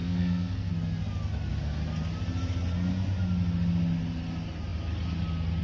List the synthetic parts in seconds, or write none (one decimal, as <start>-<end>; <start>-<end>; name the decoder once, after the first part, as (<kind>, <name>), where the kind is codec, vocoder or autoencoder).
0.0-0.7 (codec, SNAC)